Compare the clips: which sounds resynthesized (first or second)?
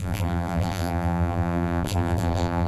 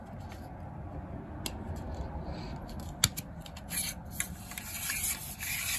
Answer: first